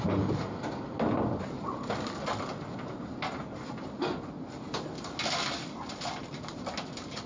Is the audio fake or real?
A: real